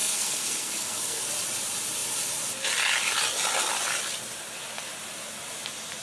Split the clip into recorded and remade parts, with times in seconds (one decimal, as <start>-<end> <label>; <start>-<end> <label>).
0.0-1.3 remade; 1.3-6.0 recorded